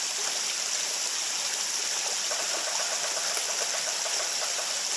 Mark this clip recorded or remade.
recorded